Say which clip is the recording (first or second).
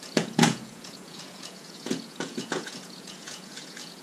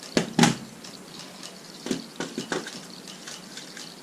second